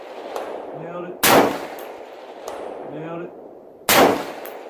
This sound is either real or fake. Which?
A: real